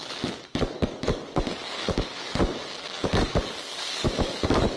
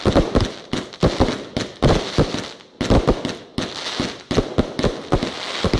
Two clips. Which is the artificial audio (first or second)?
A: first